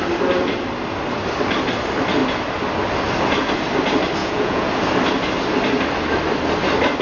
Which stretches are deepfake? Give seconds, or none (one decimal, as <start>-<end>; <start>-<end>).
4.2-4.7

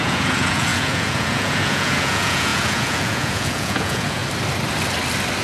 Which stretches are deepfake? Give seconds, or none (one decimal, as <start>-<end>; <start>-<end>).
0.0-4.2

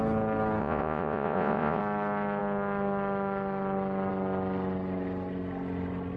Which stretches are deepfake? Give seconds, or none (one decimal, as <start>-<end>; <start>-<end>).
0.6-1.8

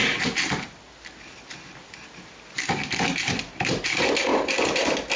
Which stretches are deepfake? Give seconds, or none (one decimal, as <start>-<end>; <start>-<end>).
none

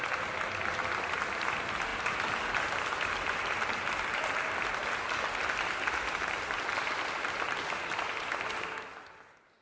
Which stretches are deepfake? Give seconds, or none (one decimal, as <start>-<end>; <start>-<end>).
none

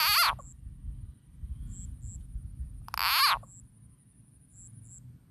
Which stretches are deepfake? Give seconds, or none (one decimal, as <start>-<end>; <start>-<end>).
none

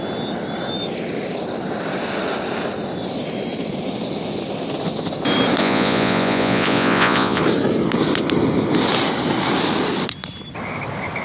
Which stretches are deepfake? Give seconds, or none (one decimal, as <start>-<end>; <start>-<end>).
5.6-7.4